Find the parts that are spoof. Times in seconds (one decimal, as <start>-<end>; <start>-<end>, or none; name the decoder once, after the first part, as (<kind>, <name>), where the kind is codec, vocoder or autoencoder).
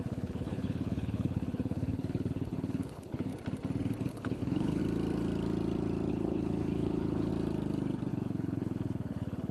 0.0-3.3 (codec, HILCodec); 4.1-4.8; 6.1-7.3; 8.1-9.5